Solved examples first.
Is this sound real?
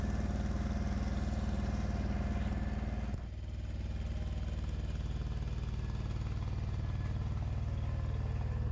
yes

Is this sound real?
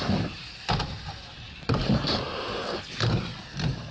yes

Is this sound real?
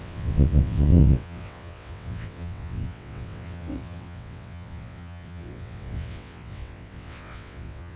no